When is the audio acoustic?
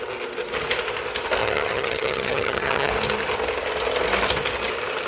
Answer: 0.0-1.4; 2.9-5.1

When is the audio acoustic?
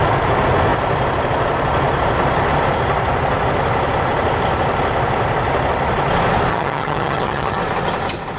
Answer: 0.0-6.5; 7.6-8.4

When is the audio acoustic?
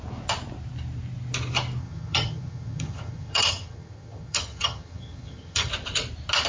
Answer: 0.0-1.8; 5.7-6.5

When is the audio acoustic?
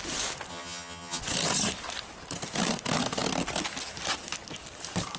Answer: 0.0-0.5; 1.2-5.2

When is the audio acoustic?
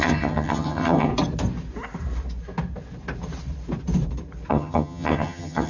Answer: 1.1-4.5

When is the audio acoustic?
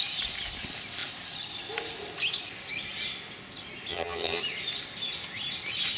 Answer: 0.0-3.9; 4.4-6.0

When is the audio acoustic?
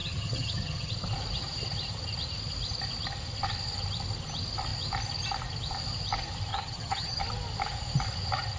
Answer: 0.9-6.5; 7.2-8.6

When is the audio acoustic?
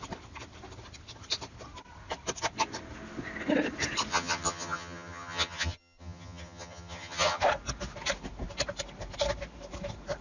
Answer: 0.0-4.1; 7.4-10.2